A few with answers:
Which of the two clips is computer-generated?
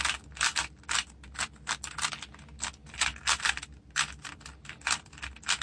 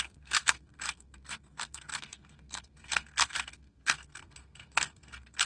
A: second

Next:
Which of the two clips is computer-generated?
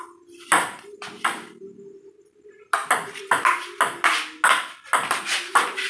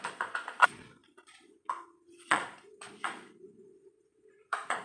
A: second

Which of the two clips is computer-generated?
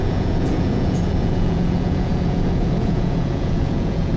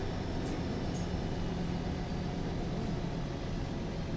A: first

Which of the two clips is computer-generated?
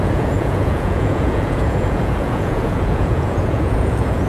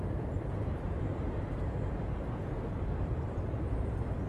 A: first